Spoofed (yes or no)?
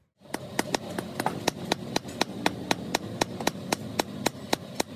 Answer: no